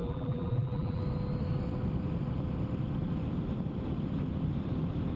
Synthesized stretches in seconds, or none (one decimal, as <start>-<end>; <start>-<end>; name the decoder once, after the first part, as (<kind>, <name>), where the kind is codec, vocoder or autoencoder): 0.0-1.0 (vocoder, BigVGAN v2)